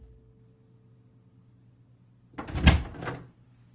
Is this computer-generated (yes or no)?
no